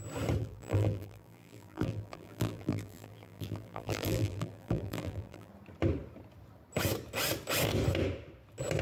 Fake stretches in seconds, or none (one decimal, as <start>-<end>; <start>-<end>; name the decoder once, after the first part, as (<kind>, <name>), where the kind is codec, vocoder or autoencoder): 0.4-5.5 (vocoder, BigVGAN v2)